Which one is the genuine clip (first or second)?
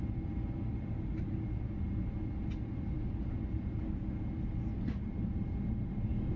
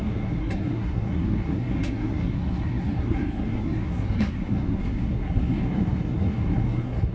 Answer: first